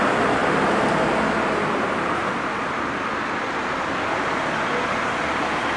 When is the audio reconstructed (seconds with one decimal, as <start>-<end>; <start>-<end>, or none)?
none